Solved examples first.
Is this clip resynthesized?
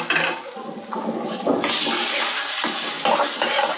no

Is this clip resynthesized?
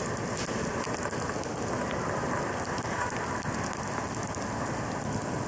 no